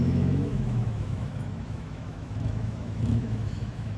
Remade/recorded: remade